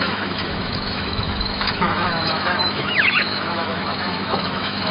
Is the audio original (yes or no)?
no